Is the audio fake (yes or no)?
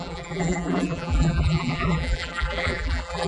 yes